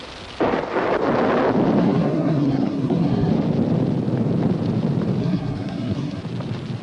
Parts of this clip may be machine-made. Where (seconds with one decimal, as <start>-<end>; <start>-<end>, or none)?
1.8-3.3; 5.2-6.2